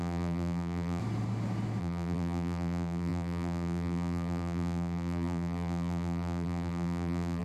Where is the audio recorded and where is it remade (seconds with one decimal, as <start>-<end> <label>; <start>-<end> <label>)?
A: 0.0-1.0 remade; 1.0-1.8 recorded; 1.8-7.4 remade